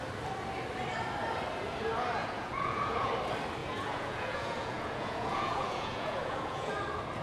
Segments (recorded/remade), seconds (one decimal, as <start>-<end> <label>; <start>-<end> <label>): 0.0-2.2 recorded; 2.2-3.1 remade; 3.1-3.6 recorded; 3.6-6.7 remade; 6.7-7.2 recorded